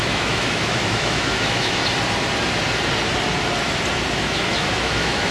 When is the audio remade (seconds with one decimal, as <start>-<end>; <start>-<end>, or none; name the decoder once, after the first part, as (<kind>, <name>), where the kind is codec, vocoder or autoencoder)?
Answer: 0.0-1.8 (autoencoder, DAC-VAE); 4.1-5.3